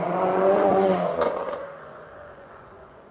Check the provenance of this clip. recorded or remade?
remade